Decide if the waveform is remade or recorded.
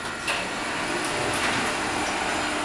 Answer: recorded